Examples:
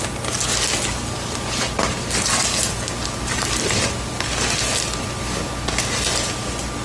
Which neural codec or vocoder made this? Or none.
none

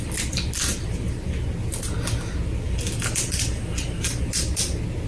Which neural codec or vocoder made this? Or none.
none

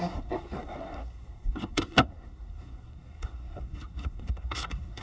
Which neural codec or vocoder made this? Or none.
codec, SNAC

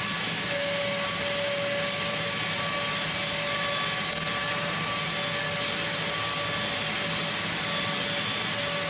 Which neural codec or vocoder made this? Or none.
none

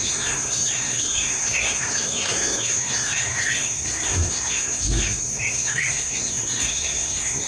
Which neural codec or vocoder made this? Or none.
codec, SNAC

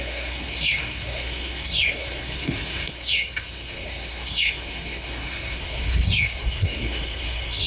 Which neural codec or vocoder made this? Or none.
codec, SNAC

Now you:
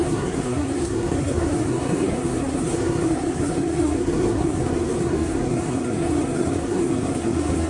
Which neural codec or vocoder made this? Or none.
codec, SNAC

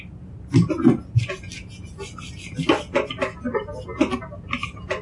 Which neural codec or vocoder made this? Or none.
none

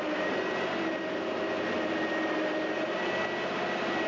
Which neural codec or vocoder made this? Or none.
none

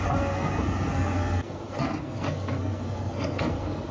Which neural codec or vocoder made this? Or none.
codec, SNAC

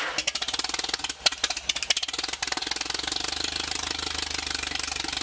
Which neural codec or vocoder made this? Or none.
none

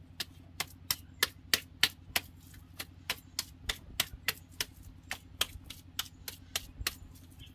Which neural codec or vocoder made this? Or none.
none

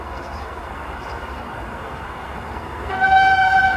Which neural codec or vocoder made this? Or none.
codec, SNAC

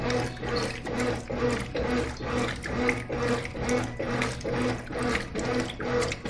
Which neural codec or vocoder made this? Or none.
none